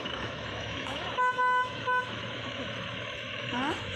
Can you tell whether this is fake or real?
fake